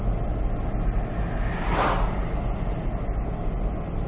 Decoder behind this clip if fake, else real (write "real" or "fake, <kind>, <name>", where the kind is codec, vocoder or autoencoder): real